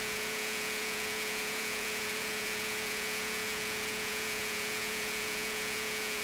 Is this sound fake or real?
fake